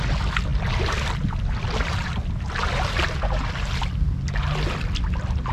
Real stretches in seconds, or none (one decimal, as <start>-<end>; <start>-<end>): 0.0-5.5